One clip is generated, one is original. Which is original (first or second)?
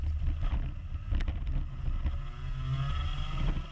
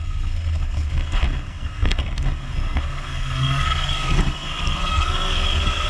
first